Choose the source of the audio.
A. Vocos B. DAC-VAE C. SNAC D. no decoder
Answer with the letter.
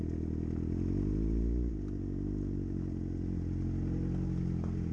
D